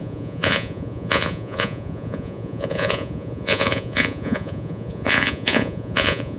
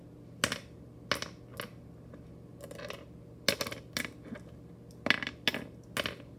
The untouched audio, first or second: second